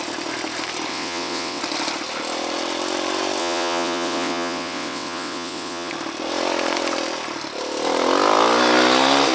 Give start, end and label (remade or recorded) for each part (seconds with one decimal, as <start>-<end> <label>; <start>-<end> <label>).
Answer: 0.0-0.9 recorded; 0.9-1.6 remade; 1.6-3.4 recorded; 3.4-5.9 remade; 5.9-9.3 recorded